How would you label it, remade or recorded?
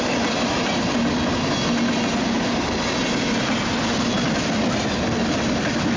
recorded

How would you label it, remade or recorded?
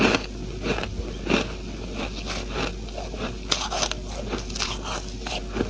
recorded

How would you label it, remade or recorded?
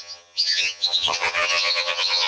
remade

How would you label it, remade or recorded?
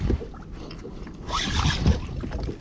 recorded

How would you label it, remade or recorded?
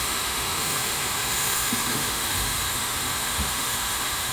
remade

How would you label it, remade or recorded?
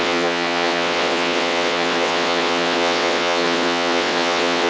remade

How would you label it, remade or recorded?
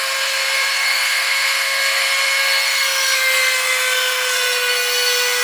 remade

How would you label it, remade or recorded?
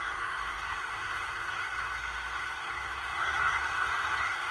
remade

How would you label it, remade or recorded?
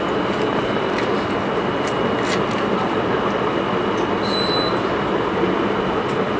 recorded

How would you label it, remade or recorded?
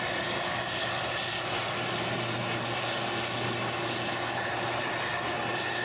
recorded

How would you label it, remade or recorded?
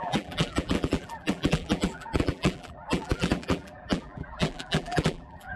remade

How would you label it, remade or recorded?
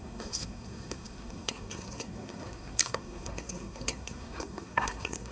remade